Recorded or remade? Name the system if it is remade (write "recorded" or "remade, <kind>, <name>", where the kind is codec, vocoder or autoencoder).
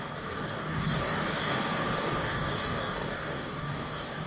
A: remade, codec, DAC